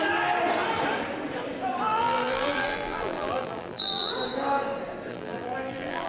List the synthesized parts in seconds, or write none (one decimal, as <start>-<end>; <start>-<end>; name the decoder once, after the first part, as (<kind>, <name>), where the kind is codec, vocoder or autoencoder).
1.9-4.1 (vocoder, BigVGAN v2); 5.1-6.1